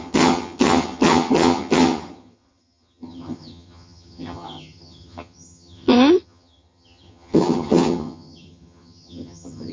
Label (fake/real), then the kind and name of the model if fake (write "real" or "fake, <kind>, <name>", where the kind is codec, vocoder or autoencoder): fake, vocoder, HiFi-GAN